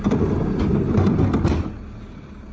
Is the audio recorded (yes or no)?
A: yes